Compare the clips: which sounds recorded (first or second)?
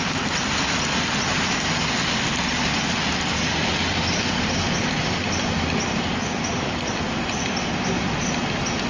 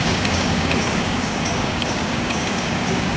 first